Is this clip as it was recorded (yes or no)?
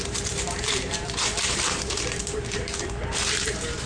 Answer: no